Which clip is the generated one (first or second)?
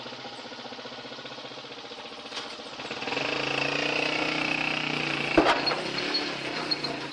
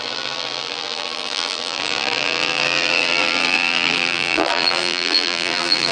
second